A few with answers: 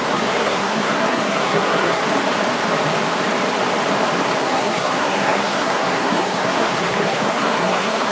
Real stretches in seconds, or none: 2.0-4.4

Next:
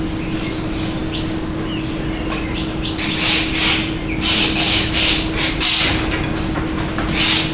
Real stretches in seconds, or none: 0.0-7.5

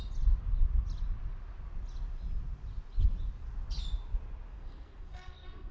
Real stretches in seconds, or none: 0.0-4.5

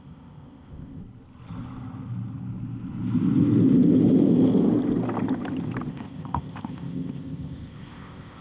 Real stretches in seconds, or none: 1.0-5.9

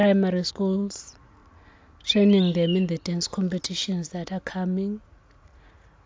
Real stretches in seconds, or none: 0.0-0.5; 1.4-5.1

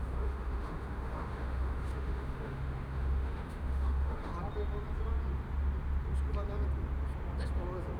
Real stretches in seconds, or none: 4.3-8.0

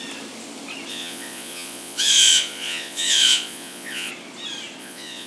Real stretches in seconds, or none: 0.0-0.9; 4.1-4.8

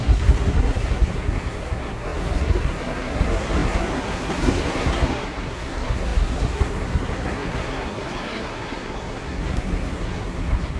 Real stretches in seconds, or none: none